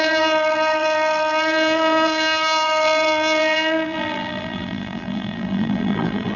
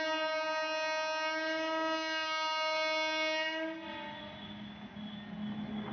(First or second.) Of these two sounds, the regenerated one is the first